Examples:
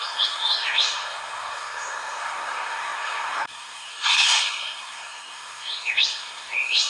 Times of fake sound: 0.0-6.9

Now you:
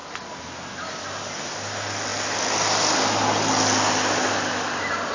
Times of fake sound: none

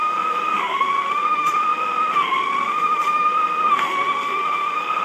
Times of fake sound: 0.0-5.0

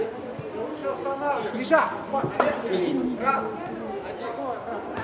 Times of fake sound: none

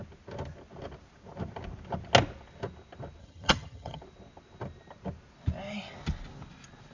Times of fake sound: 3.2-4.0